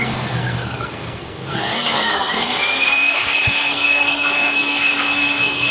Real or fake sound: fake